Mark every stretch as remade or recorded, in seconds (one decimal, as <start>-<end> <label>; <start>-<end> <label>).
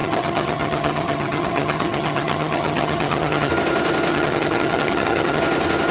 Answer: 0.0-3.5 remade; 3.5-4.1 recorded; 4.1-5.4 remade; 5.4-5.9 recorded